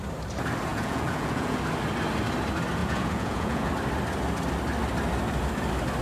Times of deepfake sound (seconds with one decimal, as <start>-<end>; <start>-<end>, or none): 0.7-1.6; 2.8-3.7